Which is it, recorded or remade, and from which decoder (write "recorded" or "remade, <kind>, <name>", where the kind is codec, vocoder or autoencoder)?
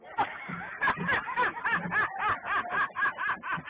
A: recorded